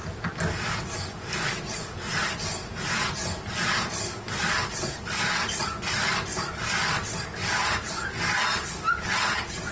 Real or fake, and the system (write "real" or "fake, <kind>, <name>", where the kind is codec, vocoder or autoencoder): real